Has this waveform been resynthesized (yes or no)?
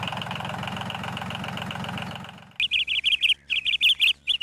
no